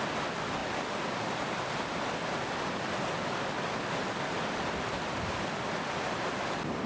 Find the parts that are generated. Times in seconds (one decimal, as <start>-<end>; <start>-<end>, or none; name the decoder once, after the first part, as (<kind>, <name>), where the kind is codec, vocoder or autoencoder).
none